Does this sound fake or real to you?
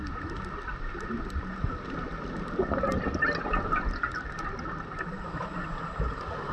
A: real